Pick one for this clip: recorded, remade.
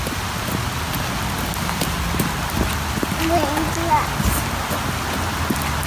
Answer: recorded